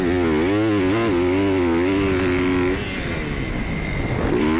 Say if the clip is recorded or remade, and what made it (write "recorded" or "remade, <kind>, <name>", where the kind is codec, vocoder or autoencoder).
recorded